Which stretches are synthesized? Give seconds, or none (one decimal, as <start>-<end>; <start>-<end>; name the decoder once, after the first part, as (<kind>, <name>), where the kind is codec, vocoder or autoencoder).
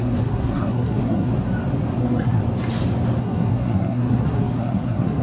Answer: 0.0-1.3 (codec, SNAC); 2.0-2.4; 3.2-5.2